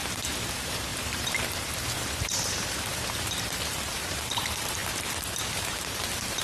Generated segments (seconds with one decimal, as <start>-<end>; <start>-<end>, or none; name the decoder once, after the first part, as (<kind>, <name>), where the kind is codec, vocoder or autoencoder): 0.5-4.8 (vocoder, BigVGAN v2); 5.5-6.4